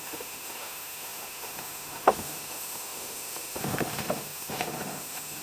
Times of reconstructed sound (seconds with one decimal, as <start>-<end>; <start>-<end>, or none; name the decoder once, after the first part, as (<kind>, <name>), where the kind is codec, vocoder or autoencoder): 0.0-5.4 (autoencoder, DAC-VAE)